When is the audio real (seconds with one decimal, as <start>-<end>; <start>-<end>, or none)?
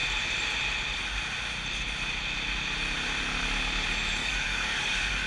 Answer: 0.0-4.2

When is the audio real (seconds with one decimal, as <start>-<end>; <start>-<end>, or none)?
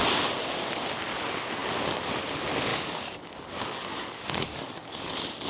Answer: 0.0-2.7; 5.1-5.5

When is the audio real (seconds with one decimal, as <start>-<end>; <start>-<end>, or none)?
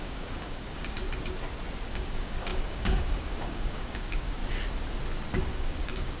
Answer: 1.0-1.9; 4.4-5.4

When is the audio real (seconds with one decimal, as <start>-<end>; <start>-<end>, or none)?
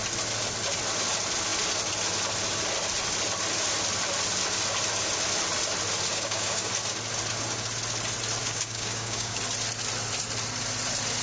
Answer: 0.0-6.1; 6.7-8.4; 9.4-11.2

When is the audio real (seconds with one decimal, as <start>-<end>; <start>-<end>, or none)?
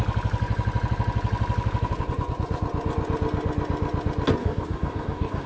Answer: 0.0-4.4